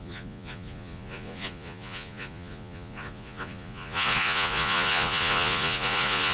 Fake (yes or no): yes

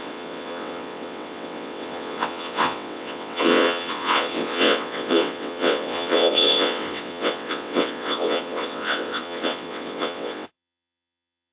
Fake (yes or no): yes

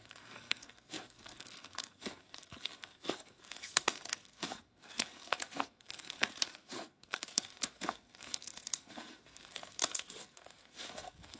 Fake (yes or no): yes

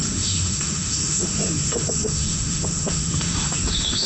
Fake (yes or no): yes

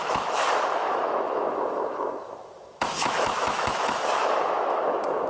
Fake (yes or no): yes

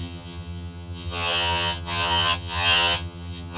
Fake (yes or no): yes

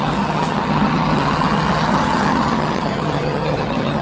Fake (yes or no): yes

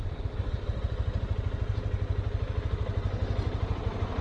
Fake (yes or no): no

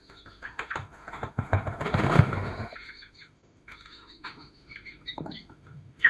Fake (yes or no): yes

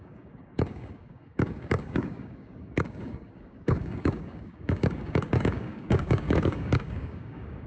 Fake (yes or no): yes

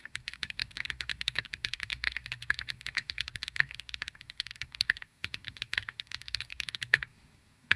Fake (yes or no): yes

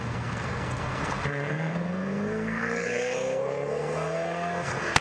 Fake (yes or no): yes